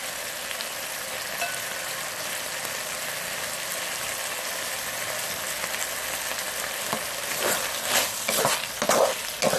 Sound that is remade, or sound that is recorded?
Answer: recorded